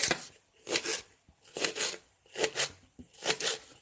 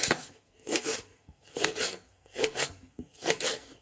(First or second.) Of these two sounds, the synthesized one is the second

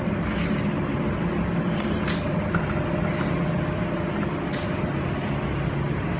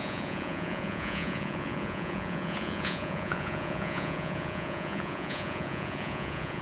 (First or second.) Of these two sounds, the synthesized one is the second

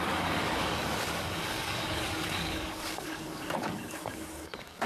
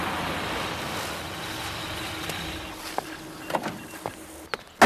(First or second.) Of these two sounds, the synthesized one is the first